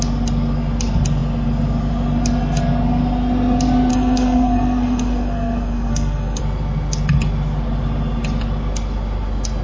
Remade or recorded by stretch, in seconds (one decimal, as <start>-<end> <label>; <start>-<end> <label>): 0.0-3.9 recorded; 3.9-6.4 remade; 6.4-9.6 recorded